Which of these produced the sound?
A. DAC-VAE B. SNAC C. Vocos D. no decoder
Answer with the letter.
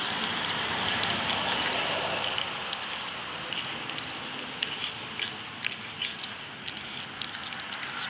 D